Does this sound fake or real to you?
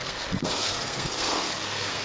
fake